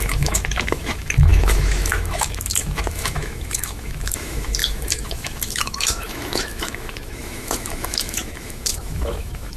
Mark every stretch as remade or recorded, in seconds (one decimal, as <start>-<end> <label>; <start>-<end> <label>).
0.0-9.6 remade